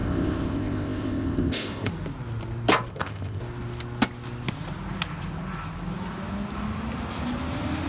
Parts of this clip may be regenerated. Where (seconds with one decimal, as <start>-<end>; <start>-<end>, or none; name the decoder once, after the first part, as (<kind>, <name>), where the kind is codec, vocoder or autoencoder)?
0.0-1.9 (codec, ZipCodec); 2.9-3.4